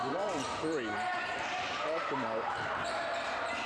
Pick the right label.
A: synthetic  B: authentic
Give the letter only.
A